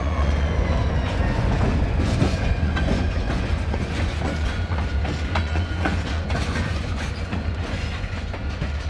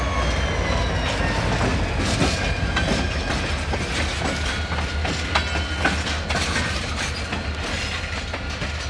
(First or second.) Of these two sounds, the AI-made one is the first